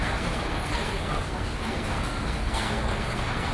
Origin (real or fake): fake